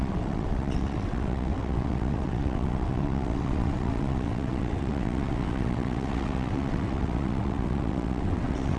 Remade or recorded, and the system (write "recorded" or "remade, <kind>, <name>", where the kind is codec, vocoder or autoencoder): remade, vocoder, WaveNeXt